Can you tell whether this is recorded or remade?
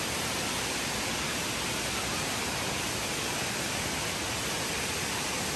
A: recorded